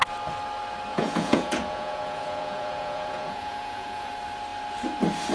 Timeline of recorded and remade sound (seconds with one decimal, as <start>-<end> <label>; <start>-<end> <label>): 0.0-0.9 recorded; 0.9-4.1 remade; 4.1-5.3 recorded